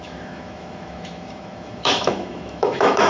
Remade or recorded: remade